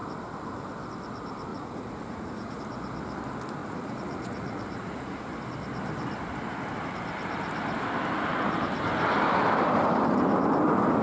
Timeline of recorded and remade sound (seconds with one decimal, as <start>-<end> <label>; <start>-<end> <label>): 0.0-1.5 recorded; 1.5-2.6 remade; 2.6-3.6 recorded; 3.6-5.4 remade; 5.4-11.0 recorded